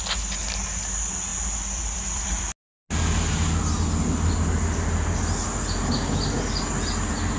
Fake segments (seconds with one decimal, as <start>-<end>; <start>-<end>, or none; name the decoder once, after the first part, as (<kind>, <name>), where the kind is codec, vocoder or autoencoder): 1.3-2.5 (vocoder, BigVGAN v2)